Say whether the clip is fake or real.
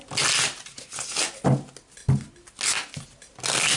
real